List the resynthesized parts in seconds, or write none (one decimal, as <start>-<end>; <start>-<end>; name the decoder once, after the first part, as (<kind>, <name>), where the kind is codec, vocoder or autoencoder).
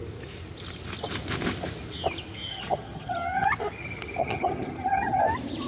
2.5-3.5 (vocoder, HiFi-GAN); 4.2-5.2